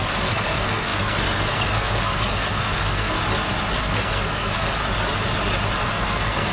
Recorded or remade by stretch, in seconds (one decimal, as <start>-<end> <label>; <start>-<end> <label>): 0.0-3.2 remade; 3.2-3.8 recorded; 3.8-4.8 remade; 4.8-5.8 recorded; 5.8-6.5 remade